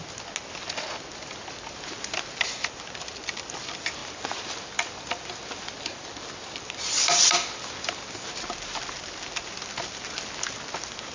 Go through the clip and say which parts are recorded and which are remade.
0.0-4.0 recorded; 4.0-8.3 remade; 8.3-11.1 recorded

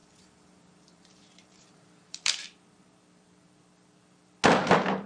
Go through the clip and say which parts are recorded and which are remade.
0.0-2.4 remade; 2.4-5.1 recorded

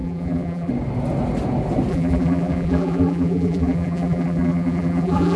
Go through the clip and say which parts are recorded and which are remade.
0.0-0.7 remade; 0.7-1.9 recorded; 1.9-5.4 remade

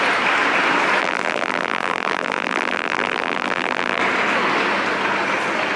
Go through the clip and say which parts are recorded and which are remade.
0.0-1.0 recorded; 1.0-4.0 remade; 4.0-5.8 recorded